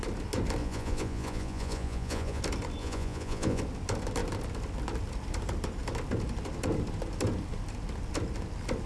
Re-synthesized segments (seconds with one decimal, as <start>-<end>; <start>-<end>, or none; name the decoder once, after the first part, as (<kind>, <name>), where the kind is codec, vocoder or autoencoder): 0.6-2.4 (vocoder, Vocos); 2.8-3.6